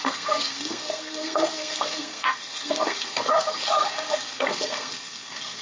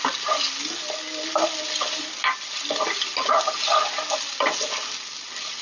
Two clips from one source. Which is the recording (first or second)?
second